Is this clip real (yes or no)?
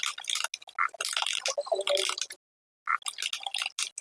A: yes